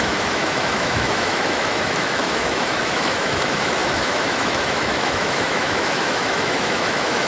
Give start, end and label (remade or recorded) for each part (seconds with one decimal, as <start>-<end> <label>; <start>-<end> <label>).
0.0-7.3 remade